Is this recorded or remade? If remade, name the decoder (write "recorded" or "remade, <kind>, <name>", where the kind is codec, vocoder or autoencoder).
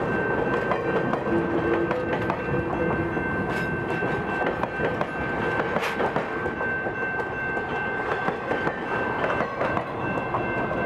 recorded